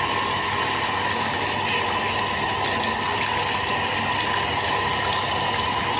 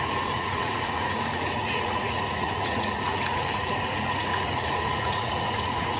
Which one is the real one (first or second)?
first